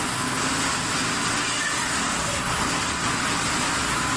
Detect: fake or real real